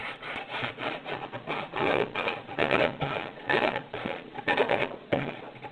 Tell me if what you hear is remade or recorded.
remade